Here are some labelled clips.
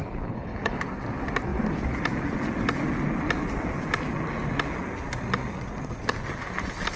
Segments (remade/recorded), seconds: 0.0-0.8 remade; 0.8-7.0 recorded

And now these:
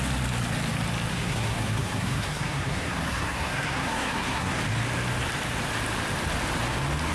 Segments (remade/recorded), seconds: 0.0-1.1 recorded; 1.1-4.6 remade; 4.6-7.1 recorded

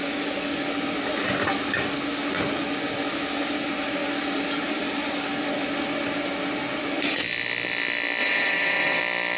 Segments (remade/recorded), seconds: 0.0-8.2 recorded; 8.2-9.0 remade; 9.0-9.4 recorded

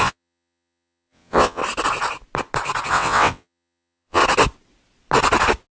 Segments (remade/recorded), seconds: 0.0-1.6 remade; 1.6-2.9 recorded; 2.9-4.2 remade; 4.2-5.8 recorded